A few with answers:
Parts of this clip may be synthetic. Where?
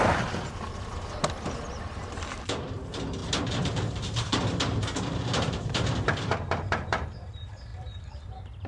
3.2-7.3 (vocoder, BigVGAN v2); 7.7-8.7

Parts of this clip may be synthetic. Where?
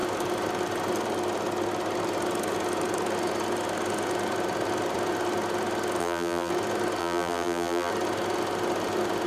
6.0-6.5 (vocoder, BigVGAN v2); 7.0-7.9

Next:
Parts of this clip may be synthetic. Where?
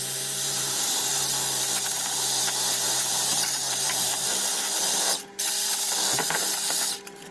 0.0-1.1 (vocoder, BigVGAN v2); 1.9-4.1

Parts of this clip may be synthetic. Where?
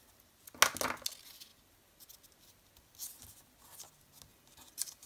4.3-5.1 (vocoder, BigVGAN v2)